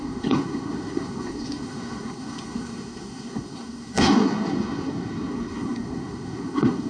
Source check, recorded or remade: remade